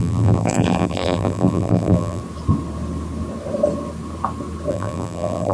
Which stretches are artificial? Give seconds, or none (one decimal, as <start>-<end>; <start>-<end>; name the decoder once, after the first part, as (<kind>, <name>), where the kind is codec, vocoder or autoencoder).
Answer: 0.0-2.2 (vocoder, BigVGAN v2); 4.7-5.5

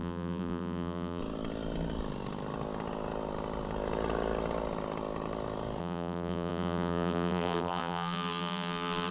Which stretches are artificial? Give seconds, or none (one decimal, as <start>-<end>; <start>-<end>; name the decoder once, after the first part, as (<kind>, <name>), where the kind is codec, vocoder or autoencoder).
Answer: 0.0-1.2 (vocoder, BigVGAN v2); 5.8-9.1

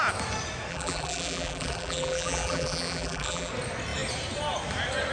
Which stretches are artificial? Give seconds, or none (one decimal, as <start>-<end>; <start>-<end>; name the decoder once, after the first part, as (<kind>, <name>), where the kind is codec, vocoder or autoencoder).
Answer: 0.7-3.5 (vocoder, BigVGAN v2)

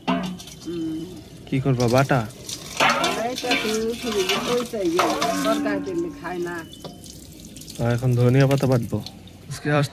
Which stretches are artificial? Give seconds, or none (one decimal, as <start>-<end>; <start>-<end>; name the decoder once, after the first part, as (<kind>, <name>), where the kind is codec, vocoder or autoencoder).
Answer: 5.4-6.8 (vocoder, BigVGAN v2); 7.3-9.9

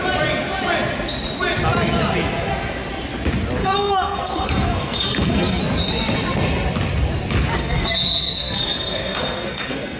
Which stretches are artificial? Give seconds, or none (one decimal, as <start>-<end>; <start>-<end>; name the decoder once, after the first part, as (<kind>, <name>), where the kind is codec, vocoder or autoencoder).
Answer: 3.6-5.6 (codec, SNAC); 7.6-10.0

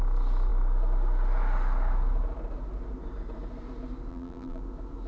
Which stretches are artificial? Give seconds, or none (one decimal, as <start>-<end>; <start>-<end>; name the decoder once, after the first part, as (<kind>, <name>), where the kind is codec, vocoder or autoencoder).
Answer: 4.1-4.6 (vocoder, BigVGAN v2)